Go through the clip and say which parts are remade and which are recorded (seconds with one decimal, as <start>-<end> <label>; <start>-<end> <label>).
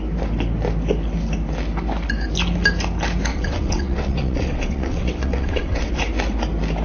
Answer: 0.0-3.3 recorded; 3.3-6.0 remade; 6.0-6.8 recorded